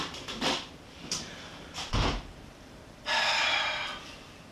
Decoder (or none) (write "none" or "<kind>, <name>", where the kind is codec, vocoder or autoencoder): vocoder, BigVGAN v2